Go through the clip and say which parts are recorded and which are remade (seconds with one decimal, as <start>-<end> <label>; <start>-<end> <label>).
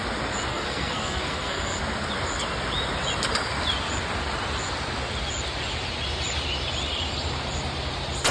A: 0.0-0.5 recorded; 0.5-1.8 remade; 1.8-8.3 recorded